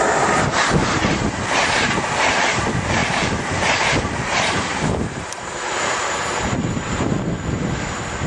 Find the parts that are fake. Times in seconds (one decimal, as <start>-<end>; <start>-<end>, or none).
0.8-2.1; 3.0-7.1